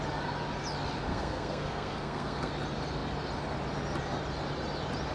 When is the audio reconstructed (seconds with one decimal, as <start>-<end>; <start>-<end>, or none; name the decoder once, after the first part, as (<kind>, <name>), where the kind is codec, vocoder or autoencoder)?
1.1-2.5 (codec, SNAC)